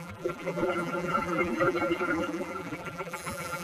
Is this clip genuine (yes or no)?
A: no